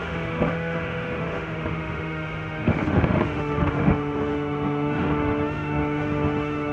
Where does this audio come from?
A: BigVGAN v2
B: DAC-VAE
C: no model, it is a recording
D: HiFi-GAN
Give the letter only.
B